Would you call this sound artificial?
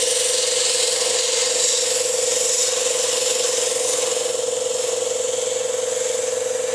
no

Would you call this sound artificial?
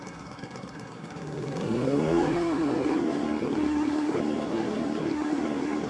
yes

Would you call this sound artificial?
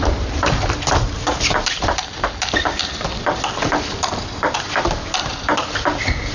no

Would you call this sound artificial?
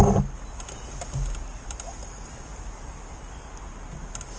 no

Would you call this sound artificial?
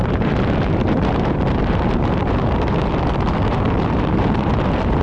yes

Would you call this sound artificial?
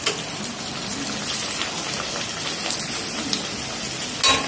no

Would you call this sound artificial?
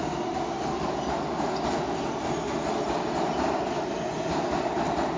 no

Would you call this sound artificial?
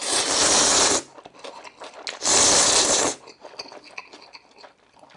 no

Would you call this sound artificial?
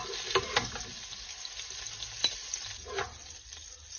no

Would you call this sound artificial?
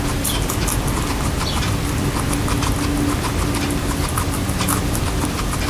no